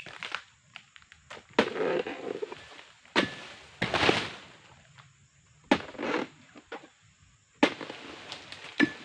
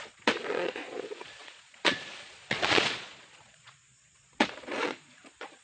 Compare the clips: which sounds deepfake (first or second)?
second